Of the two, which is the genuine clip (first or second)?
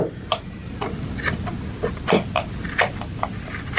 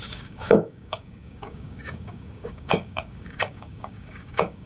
first